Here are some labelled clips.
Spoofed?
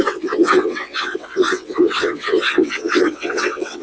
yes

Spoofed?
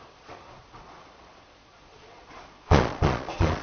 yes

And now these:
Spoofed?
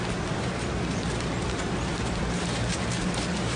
no